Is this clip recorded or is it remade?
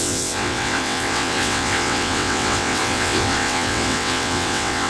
remade